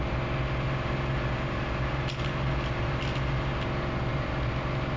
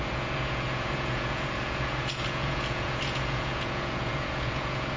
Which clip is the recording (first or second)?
first